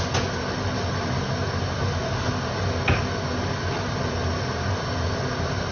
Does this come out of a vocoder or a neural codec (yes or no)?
no